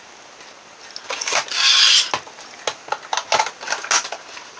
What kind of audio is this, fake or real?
real